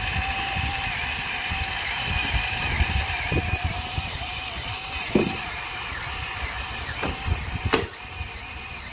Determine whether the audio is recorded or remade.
remade